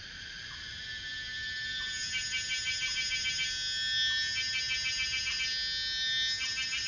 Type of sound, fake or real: real